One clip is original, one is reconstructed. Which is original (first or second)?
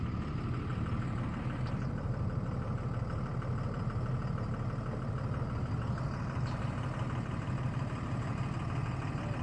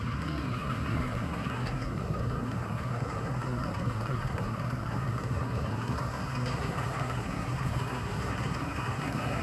first